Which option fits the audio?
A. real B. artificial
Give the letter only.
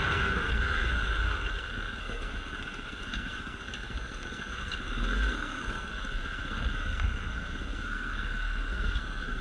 B